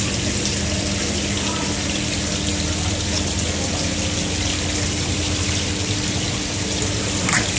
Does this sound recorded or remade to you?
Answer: recorded